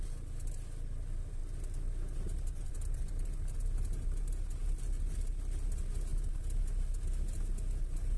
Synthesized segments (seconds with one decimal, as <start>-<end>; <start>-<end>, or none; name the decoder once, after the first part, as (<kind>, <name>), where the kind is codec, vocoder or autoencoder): none